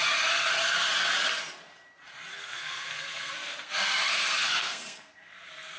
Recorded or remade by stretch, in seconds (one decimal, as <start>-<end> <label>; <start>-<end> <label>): 0.0-2.3 recorded; 2.3-5.8 remade